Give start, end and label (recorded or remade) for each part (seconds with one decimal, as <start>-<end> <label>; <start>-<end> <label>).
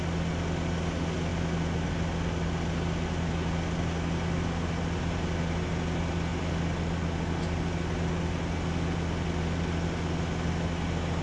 0.0-11.2 recorded